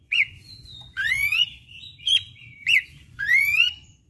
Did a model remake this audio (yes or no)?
yes